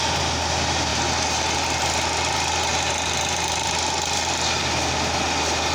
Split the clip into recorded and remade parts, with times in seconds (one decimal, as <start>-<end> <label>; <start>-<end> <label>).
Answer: 0.0-5.7 recorded